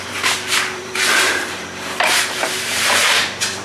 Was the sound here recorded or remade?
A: remade